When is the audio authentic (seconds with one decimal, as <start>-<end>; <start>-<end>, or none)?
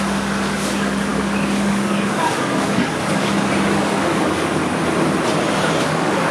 4.6-5.8